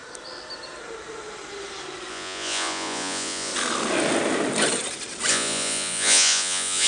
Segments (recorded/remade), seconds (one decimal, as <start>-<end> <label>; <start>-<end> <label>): 0.0-2.1 recorded; 2.1-3.5 remade; 3.5-5.3 recorded; 5.3-6.9 remade